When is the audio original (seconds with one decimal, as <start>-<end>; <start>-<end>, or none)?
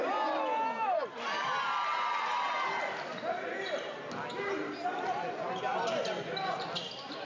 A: 0.0-7.3